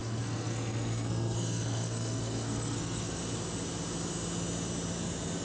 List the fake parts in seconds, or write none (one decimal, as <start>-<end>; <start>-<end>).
0.0-3.2